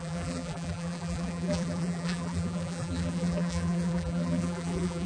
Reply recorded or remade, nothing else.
remade